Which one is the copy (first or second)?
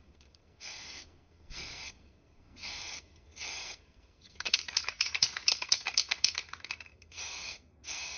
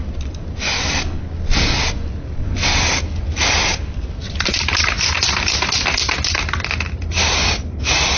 first